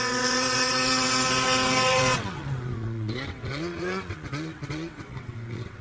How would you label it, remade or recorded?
remade